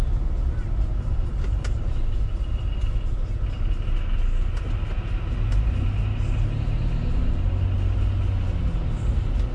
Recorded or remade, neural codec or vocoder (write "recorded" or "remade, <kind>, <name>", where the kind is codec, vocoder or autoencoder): recorded